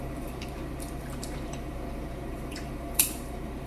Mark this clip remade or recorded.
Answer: remade